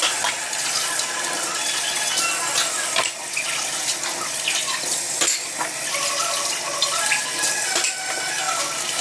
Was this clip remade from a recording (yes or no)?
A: no